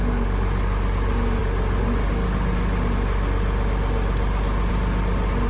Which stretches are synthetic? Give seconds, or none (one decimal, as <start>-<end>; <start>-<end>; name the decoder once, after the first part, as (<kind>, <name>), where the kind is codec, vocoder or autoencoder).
none